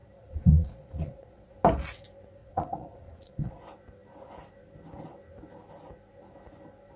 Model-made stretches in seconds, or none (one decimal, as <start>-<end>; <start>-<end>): 0.0-1.5; 2.4-3.6